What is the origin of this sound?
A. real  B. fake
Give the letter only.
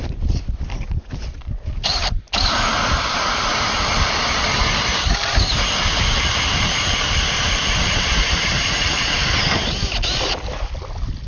B